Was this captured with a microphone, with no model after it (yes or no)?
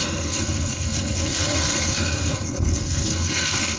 no